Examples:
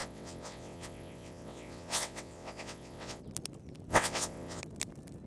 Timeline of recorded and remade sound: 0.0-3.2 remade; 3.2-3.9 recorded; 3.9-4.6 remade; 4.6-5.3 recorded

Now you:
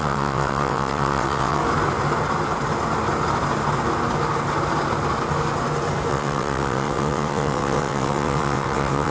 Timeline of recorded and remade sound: 0.0-1.6 remade; 1.6-6.1 recorded; 6.1-9.1 remade

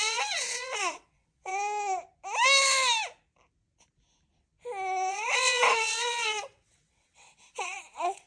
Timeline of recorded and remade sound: 0.0-1.5 remade; 1.5-5.1 recorded; 5.1-8.3 remade

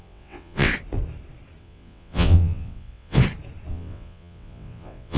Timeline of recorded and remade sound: 0.0-0.7 remade; 0.7-1.6 recorded; 1.6-3.2 remade; 3.2-3.7 recorded; 3.7-5.2 remade

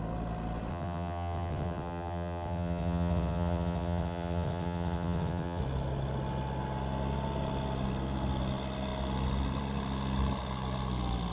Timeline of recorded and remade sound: 0.0-0.7 recorded; 0.7-5.6 remade; 5.6-11.3 recorded

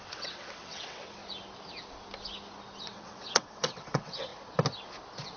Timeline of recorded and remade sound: 0.0-1.2 remade; 1.2-2.8 recorded; 2.8-4.3 remade; 4.3-5.4 recorded

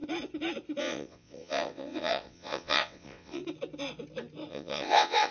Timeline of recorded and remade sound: 0.0-0.8 recorded; 0.8-3.4 remade; 3.4-4.5 recorded; 4.5-5.3 remade

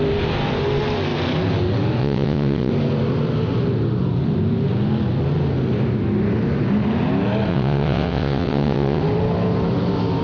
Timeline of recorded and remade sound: 0.0-2.0 recorded; 2.0-2.7 remade; 2.7-7.5 recorded; 7.5-9.0 remade; 9.0-10.2 recorded